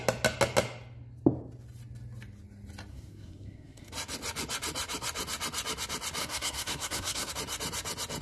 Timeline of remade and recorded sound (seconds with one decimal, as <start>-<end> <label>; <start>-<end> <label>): 0.0-2.9 recorded; 2.9-3.9 remade; 3.9-6.2 recorded; 6.2-7.3 remade; 7.3-8.2 recorded